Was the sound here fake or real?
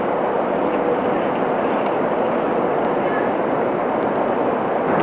real